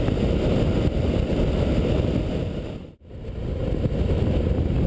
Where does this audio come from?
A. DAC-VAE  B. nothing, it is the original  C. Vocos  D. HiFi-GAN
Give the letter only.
B